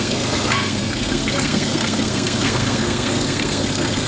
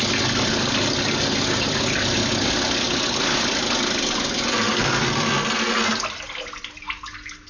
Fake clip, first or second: first